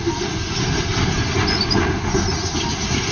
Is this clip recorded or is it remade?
recorded